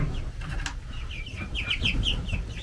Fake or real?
real